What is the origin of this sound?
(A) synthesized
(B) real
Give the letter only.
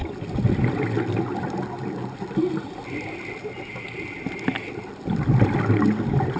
B